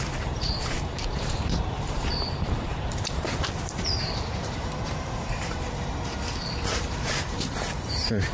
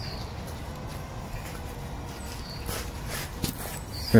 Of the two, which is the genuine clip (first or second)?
second